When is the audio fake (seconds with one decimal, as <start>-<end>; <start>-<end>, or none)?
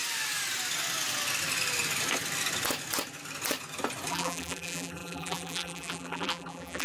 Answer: 4.1-6.8